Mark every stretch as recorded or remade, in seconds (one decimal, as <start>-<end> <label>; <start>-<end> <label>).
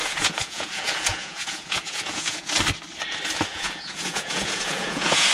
0.0-2.5 remade; 2.5-3.5 recorded; 3.5-5.3 remade